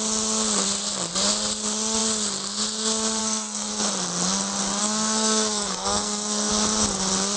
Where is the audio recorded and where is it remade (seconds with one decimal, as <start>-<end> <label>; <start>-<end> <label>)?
0.0-3.2 recorded; 3.2-3.7 remade; 3.7-4.8 recorded; 4.8-6.5 remade; 6.5-7.4 recorded